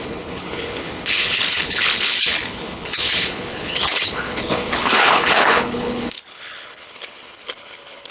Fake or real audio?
fake